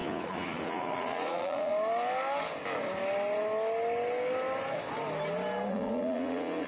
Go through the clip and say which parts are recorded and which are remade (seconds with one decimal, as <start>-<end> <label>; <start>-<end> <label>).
0.0-1.7 remade; 1.7-5.7 recorded; 5.7-6.7 remade